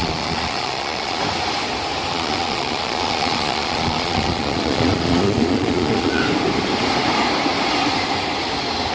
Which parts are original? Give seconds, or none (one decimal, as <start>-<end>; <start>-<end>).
1.2-2.1; 6.2-8.9